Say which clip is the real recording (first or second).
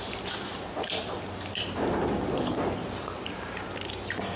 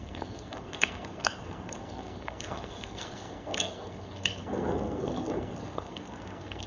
first